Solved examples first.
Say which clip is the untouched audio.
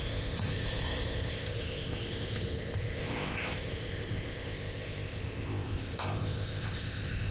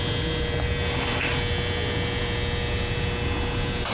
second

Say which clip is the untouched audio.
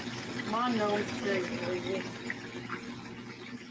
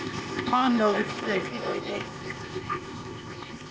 first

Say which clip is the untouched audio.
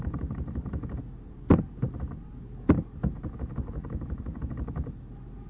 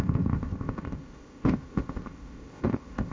first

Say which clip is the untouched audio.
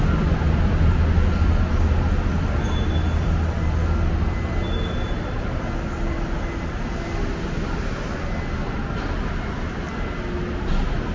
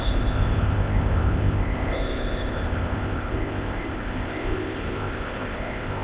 first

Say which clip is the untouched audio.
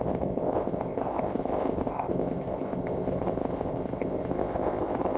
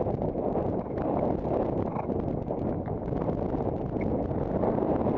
second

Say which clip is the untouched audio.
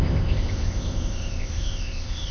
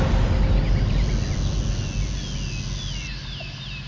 second